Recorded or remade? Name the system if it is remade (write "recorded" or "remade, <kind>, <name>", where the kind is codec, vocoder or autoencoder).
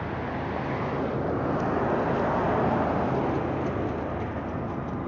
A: recorded